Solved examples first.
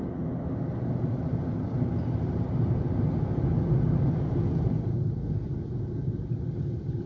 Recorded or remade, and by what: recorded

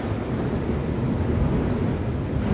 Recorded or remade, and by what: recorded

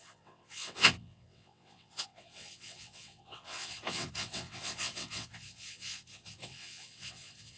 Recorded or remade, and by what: remade, vocoder, WaveNeXt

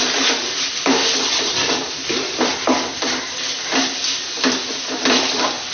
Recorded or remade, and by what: recorded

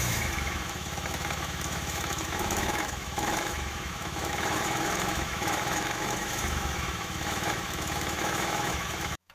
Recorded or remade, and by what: remade, autoencoder, DAC-VAE